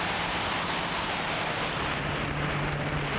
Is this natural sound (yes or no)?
yes